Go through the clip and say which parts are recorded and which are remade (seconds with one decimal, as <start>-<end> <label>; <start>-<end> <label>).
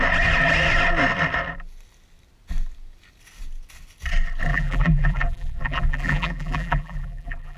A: 0.0-4.5 recorded; 4.5-7.6 remade